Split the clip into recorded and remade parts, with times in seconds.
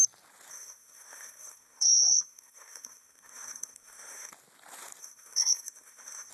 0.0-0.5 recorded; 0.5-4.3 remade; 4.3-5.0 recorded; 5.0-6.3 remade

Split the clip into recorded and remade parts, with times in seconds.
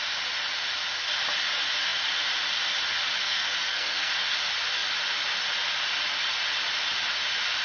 0.0-3.2 recorded; 3.2-4.1 remade; 4.1-7.6 recorded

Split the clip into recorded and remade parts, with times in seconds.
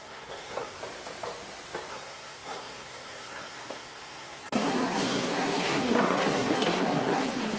0.0-0.8 remade; 0.8-1.9 recorded; 1.9-7.6 remade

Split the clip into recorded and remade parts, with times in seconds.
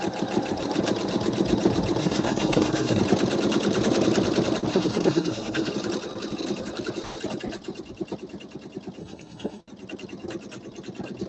0.0-2.0 recorded; 2.0-3.0 remade; 3.0-4.7 recorded; 4.7-5.7 remade; 5.7-9.0 recorded; 9.0-9.6 remade; 9.6-11.3 recorded